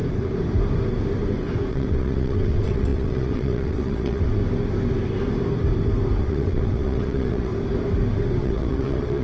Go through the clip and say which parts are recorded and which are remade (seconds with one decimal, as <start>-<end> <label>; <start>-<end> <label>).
0.0-1.7 recorded; 1.7-4.4 remade; 4.4-6.2 recorded; 6.2-7.5 remade; 7.5-8.4 recorded; 8.4-9.2 remade